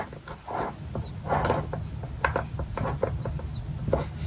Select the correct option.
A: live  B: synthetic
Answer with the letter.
A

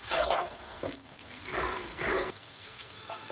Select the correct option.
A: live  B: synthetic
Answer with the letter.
B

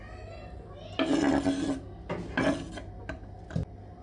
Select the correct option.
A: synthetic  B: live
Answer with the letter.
B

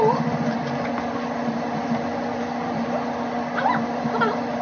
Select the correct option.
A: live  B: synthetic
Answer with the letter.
A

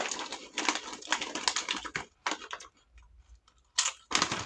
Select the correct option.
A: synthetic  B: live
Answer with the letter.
B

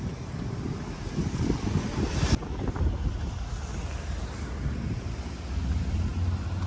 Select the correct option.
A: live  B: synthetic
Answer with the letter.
A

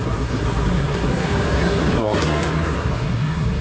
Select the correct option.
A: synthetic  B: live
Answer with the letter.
A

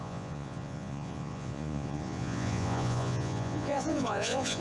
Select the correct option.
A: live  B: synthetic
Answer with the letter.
B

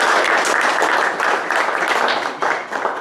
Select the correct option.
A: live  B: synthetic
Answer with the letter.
B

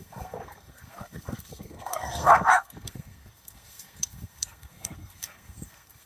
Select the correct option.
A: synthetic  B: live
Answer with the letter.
A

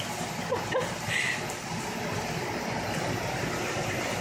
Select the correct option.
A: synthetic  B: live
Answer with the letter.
B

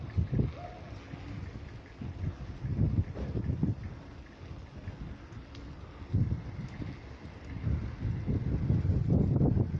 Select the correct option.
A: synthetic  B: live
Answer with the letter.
B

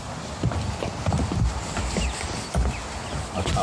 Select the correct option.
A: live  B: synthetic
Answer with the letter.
A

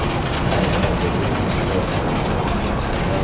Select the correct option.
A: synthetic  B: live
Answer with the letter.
B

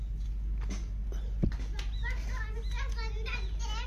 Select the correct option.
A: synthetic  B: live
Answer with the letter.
B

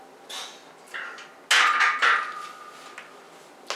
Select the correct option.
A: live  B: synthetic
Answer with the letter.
A